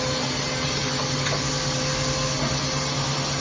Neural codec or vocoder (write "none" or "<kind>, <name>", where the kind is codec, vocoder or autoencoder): none